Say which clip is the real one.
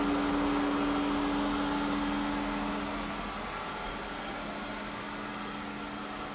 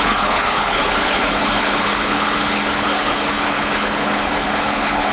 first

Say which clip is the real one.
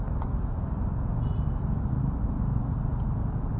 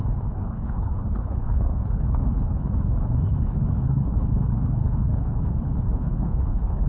first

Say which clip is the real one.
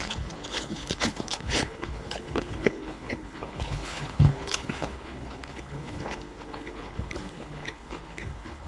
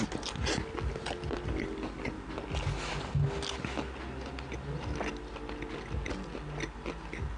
second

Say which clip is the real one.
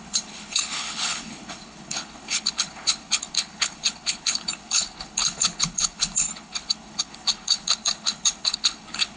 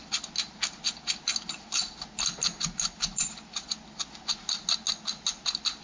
second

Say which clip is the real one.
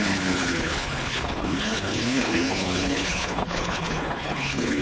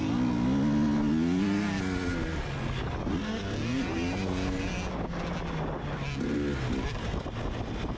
second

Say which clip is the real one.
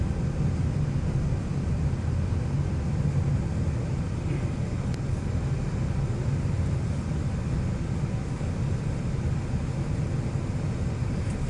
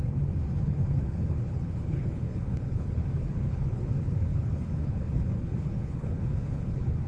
first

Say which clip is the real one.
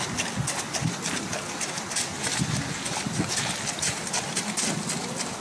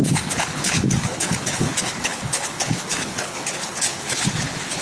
first